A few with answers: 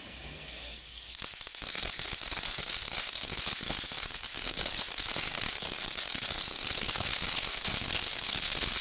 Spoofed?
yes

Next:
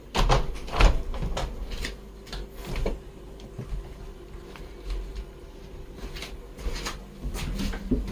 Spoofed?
no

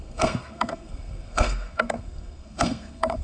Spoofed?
yes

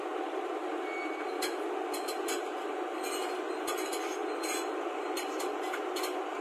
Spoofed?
no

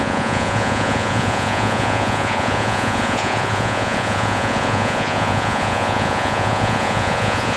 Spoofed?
yes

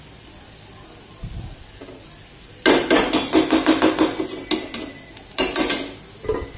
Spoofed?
no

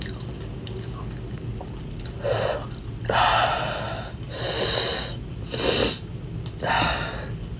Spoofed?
no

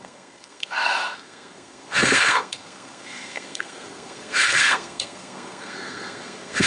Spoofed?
yes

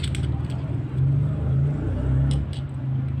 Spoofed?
no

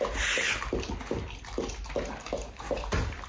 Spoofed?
no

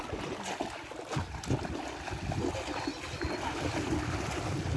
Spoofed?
no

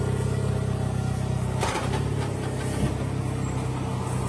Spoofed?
no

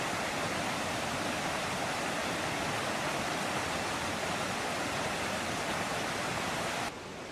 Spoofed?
no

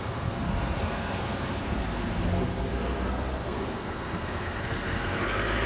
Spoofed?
yes